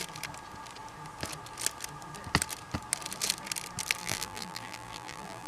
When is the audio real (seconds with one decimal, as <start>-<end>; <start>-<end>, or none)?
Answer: 0.0-4.0